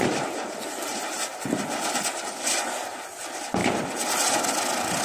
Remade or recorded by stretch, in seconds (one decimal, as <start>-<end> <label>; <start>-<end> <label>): 0.0-5.0 recorded